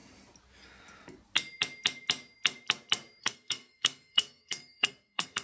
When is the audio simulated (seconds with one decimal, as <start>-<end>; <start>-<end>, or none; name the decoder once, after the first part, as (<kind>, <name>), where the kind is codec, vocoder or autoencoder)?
3.2-5.4 (codec, SNAC)